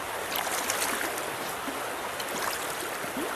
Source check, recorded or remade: recorded